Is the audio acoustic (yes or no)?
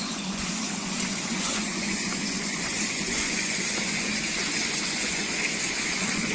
no